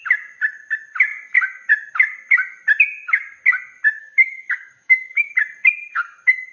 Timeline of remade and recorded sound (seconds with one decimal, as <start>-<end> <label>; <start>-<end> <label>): 0.0-4.0 recorded; 4.0-5.3 remade; 5.3-6.5 recorded